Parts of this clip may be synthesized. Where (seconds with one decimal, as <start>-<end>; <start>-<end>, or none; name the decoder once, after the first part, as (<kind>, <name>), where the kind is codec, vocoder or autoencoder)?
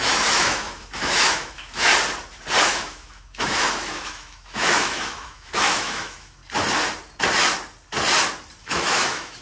0.0-1.9 (autoencoder, DAC-VAE); 2.6-6.4; 8.6-9.4